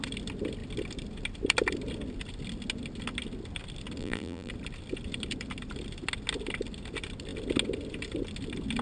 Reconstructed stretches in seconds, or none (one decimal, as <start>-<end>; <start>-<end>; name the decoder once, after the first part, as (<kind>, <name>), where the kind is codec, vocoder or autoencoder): 4.0-4.5 (vocoder, BigVGAN v2)

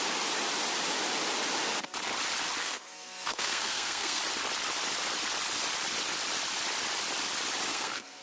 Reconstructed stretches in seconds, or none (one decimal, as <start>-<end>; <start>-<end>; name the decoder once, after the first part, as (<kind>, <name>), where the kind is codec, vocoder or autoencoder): 2.6-4.2 (codec, SNAC); 7.7-8.2

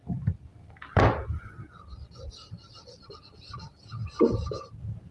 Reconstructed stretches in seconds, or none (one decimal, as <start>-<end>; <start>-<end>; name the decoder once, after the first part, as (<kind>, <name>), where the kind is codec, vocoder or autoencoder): 0.5-1.5 (vocoder, BigVGAN v2)

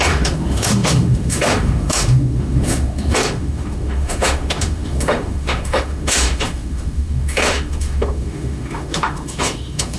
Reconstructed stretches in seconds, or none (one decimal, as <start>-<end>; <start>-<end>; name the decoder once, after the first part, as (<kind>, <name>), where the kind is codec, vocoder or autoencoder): 0.0-10.0 (autoencoder, DAC-VAE)

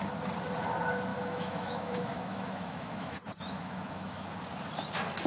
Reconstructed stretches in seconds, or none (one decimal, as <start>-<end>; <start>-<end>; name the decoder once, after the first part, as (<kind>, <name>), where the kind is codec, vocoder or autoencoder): 1.1-4.3 (autoencoder, DAC-VAE)

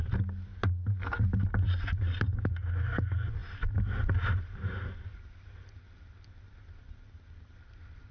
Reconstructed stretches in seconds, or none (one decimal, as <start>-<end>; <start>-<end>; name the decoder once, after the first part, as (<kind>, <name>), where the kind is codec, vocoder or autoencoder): none